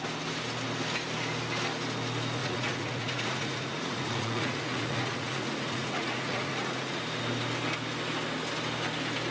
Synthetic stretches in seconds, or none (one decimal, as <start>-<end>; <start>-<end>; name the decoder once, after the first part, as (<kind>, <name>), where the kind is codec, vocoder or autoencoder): 2.4-7.0 (vocoder, Vocos)